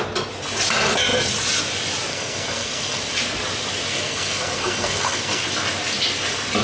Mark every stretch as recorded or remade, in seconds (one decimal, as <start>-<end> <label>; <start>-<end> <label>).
0.0-2.1 recorded; 2.1-3.0 remade; 3.0-3.9 recorded; 3.9-5.4 remade; 5.4-6.6 recorded